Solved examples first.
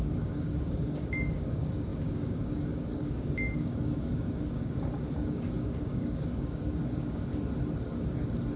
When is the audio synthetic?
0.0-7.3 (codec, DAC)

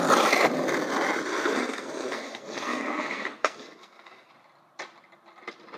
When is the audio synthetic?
1.3-4.3 (codec, SNAC)

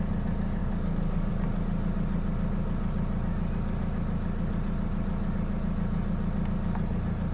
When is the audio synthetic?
0.6-1.3 (codec, DAC)

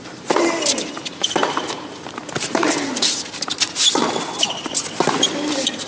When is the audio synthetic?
none

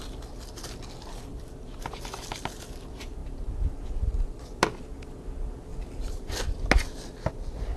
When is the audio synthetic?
none

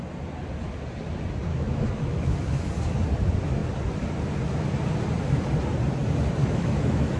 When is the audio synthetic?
1.5-2.7 (autoencoder, DAC-VAE); 6.4-7.2